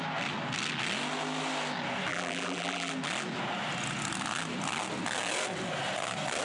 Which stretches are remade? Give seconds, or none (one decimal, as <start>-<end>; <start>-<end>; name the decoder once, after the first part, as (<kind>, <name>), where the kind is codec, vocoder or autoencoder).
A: 2.1-2.9 (vocoder, BigVGAN v2)

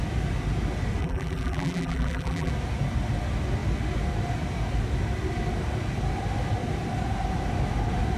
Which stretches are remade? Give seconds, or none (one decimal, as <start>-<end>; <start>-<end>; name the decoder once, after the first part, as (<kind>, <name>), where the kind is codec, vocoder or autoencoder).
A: 1.0-2.5 (vocoder, BigVGAN v2)

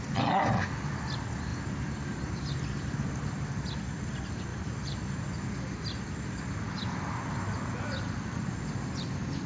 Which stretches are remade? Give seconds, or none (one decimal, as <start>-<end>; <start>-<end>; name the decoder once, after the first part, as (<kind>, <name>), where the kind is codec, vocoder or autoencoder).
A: 1.5-3.5 (vocoder, BigVGAN v2); 4.5-5.3

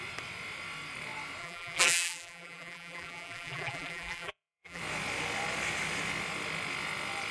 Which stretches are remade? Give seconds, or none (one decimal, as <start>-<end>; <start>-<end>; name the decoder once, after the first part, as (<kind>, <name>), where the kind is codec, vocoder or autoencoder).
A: 1.4-4.8 (vocoder, BigVGAN v2)

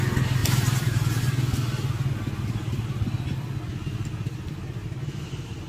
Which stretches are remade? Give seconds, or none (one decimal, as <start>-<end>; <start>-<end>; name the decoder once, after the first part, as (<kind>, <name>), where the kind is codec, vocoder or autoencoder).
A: 0.4-1.2 (vocoder, BigVGAN v2); 4.8-5.7

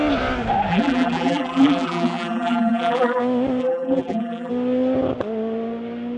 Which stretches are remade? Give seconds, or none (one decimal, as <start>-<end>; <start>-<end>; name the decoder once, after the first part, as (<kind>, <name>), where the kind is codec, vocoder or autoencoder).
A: 0.7-3.2 (vocoder, BigVGAN v2); 3.6-4.5

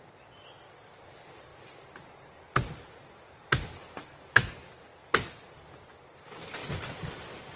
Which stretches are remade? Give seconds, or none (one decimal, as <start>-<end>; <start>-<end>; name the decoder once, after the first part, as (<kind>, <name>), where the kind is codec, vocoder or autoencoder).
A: 1.5-2.5 (vocoder, BigVGAN v2)